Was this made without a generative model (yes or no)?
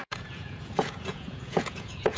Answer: no